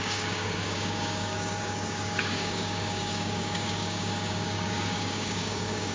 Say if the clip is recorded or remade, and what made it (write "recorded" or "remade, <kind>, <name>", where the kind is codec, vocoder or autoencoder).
remade, codec, DAC